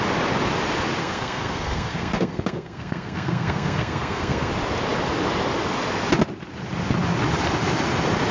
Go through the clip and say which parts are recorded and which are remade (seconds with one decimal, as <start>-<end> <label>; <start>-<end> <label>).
0.0-1.0 recorded; 1.0-4.5 remade; 4.5-8.3 recorded